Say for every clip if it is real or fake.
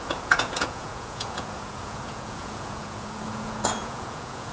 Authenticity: fake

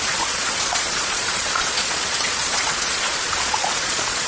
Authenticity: fake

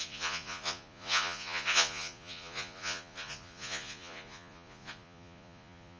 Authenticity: fake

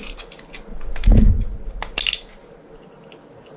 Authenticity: real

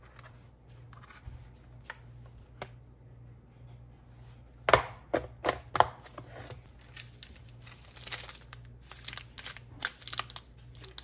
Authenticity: real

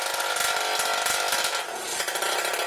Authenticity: real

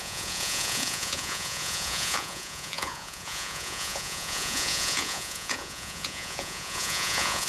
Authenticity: fake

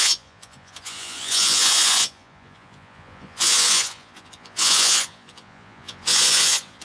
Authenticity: fake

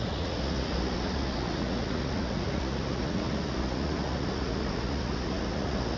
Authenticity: fake